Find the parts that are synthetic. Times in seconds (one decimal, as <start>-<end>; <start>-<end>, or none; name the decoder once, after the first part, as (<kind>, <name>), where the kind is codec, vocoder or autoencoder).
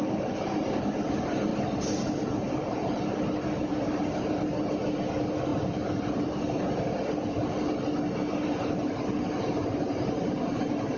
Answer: none